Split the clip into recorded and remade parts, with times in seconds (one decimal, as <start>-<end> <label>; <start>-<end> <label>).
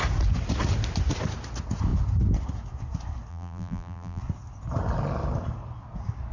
0.0-3.3 recorded; 3.3-4.2 remade; 4.2-6.3 recorded